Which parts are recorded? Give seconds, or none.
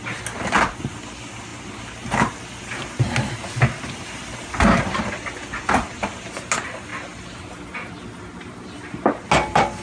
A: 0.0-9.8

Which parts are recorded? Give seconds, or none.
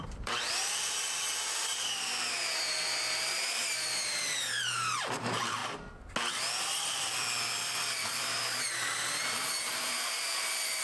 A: 5.6-7.8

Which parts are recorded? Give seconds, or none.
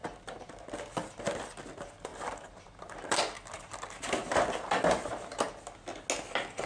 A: 0.7-2.1; 3.2-4.2; 5.4-6.7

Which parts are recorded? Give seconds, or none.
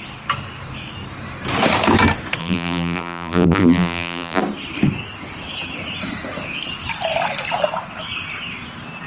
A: 0.0-2.4; 4.4-9.1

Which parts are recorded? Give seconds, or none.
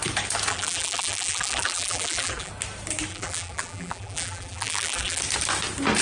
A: 0.0-0.5; 2.5-3.1; 5.2-6.0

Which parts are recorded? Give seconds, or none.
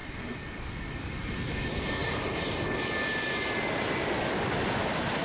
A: 0.0-2.0; 2.5-5.2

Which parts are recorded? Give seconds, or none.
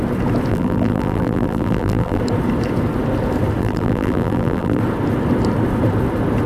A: 0.0-0.5; 2.2-3.6; 4.8-6.5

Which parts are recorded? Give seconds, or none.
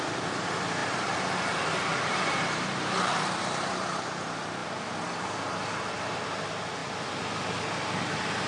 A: 0.0-0.8; 4.0-8.5